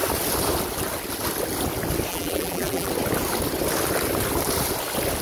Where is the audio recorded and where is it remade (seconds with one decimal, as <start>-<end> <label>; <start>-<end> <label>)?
0.0-2.1 recorded; 2.1-2.9 remade; 2.9-5.2 recorded